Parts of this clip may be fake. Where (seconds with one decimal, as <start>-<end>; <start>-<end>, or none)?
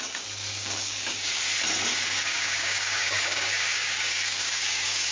0.5-1.4; 1.9-5.1